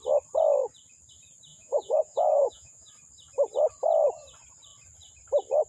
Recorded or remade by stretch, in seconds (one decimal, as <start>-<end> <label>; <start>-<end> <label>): 0.0-1.5 recorded; 1.5-2.9 remade; 2.9-5.7 recorded

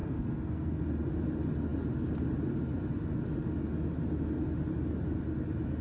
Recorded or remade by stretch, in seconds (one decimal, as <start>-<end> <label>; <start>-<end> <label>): 0.0-0.8 remade; 0.8-5.8 recorded